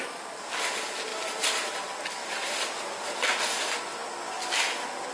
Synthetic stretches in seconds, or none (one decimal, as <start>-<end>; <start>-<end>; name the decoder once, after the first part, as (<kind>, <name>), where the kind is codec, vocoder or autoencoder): 1.1-1.8 (vocoder, BigVGAN v2); 2.2-2.8